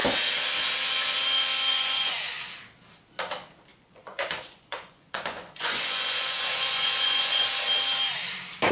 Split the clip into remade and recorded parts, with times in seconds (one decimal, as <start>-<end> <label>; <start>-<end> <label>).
0.0-1.7 recorded; 1.7-2.5 remade; 2.5-3.7 recorded; 3.7-7.5 remade; 7.5-8.7 recorded